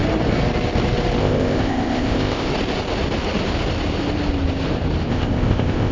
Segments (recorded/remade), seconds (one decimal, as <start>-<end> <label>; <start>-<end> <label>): 0.0-1.2 recorded; 1.2-2.5 remade; 2.5-5.1 recorded; 5.1-5.9 remade